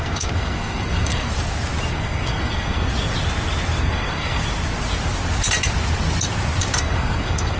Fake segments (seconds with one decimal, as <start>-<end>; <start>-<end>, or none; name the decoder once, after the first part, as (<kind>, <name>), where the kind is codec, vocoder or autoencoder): 0.0-1.3 (codec, SNAC); 1.9-2.9; 3.8-4.4; 6.8-7.6